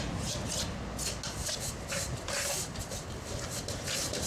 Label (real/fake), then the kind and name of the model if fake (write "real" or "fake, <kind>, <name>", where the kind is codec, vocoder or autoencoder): real